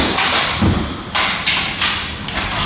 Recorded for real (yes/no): yes